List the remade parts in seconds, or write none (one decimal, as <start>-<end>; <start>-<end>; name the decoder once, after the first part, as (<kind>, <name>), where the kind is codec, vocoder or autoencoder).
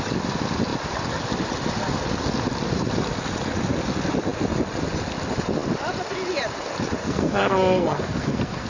7.0-8.7 (codec, SNAC)